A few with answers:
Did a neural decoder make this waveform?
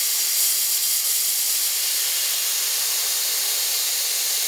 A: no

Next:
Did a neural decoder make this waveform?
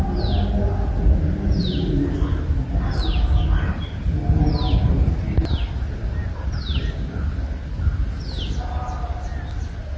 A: no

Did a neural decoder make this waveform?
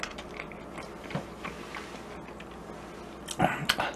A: no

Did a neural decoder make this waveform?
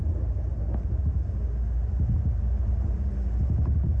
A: no